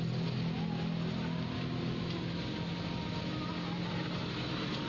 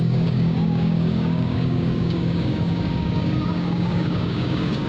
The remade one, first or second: second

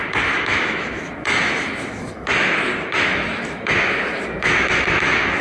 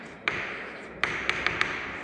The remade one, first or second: first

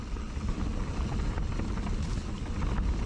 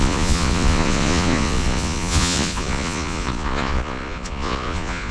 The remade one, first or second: second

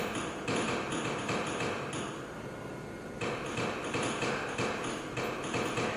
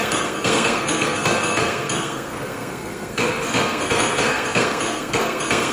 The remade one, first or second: second